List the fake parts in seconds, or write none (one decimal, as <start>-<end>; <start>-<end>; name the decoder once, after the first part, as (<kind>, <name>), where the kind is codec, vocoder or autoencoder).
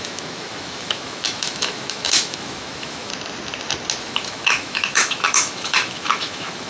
0.0-3.1 (autoencoder, DAC-VAE); 4.0-6.7